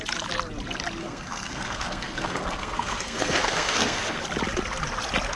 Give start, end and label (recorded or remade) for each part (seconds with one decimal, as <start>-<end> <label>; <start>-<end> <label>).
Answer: 0.0-1.0 recorded; 1.0-4.2 remade; 4.2-5.4 recorded